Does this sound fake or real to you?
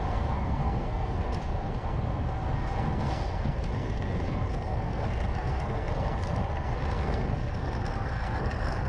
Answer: fake